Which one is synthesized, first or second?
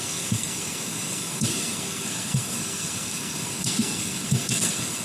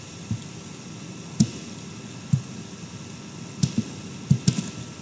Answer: first